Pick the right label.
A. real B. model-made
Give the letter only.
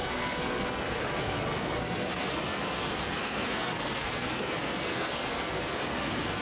B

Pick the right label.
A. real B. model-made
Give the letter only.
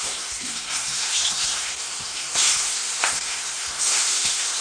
B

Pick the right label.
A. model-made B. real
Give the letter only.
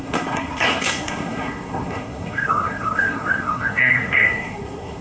A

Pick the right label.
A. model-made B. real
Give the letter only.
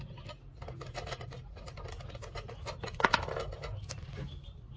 B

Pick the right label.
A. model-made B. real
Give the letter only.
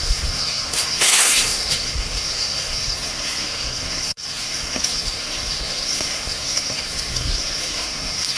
A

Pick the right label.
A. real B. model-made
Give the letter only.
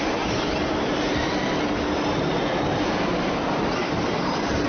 A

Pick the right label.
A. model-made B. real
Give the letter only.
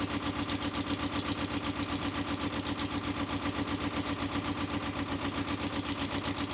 B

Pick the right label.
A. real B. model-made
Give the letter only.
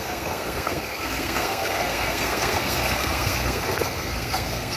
B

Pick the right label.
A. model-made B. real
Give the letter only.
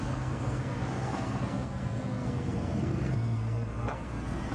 A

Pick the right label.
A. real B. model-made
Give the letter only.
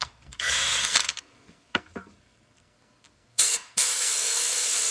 B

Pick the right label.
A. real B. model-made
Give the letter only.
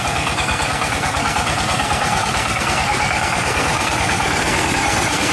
B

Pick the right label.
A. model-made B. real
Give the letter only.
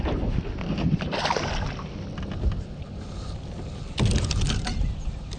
B